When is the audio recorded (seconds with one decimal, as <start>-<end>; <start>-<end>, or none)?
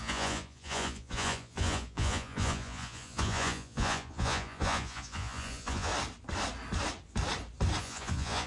5.9-7.8